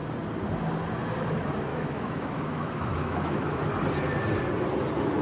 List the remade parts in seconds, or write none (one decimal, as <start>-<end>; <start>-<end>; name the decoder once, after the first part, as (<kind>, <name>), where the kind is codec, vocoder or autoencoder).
1.7-3.6 (autoencoder, DAC-VAE)